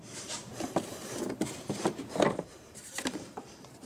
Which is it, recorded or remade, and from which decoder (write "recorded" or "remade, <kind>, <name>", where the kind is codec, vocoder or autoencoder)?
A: remade, vocoder, BigVGAN v2